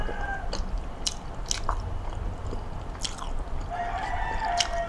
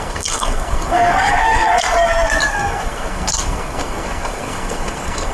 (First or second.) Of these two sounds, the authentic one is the first